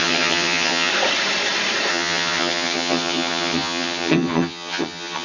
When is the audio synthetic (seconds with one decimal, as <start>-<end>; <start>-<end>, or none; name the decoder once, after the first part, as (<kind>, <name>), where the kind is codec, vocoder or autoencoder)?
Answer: 0.0-0.9 (vocoder, HiFi-GAN); 1.9-5.2

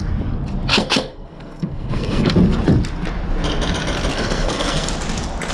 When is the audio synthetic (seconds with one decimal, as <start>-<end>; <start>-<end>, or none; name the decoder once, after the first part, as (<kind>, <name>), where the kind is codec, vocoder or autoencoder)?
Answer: 0.7-2.3 (codec, SNAC); 4.1-4.9

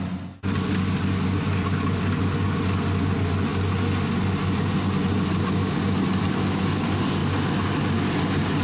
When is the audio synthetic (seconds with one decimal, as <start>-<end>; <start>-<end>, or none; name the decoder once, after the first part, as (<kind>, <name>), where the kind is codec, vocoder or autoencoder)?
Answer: none

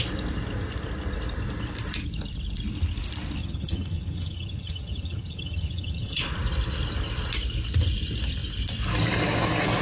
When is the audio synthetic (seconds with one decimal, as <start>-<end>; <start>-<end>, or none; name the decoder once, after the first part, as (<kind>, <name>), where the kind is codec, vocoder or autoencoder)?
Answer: 3.4-6.2 (vocoder, HiFi-GAN)